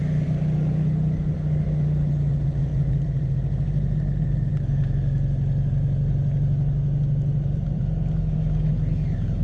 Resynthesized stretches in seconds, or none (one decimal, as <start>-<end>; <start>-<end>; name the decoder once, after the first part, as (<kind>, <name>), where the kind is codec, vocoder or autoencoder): none